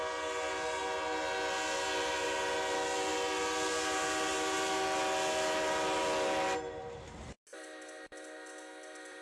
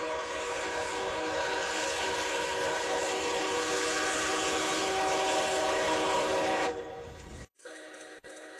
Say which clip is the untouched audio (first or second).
first